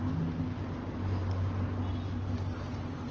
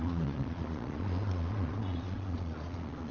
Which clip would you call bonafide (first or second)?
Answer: first